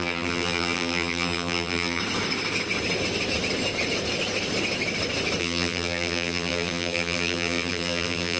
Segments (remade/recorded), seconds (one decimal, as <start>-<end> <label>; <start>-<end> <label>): 0.0-2.0 remade; 2.0-5.4 recorded; 5.4-8.4 remade